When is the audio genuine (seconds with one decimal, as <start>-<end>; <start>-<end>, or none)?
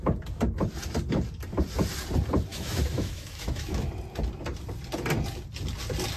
0.0-2.5; 3.9-6.2